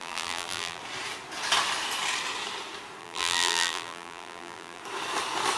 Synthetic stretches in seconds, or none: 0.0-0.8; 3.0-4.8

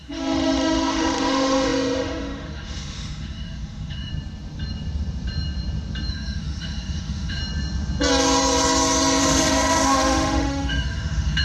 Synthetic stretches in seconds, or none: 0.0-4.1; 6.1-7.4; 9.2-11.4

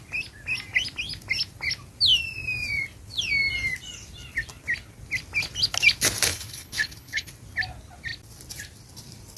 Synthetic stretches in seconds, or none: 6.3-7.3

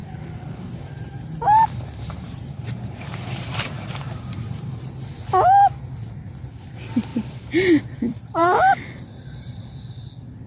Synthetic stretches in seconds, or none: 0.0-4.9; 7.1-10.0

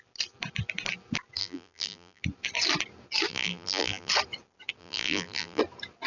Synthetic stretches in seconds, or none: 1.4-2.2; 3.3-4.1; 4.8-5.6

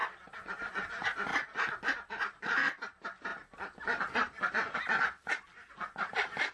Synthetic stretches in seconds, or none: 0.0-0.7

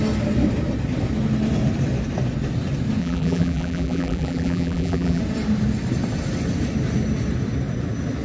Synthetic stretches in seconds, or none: 3.0-5.2